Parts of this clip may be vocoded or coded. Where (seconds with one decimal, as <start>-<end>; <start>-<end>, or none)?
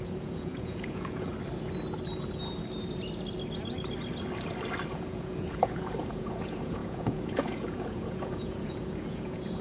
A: 0.0-1.3; 4.9-9.6